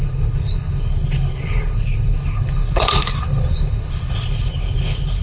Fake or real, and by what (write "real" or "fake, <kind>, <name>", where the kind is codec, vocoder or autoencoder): fake, codec, HILCodec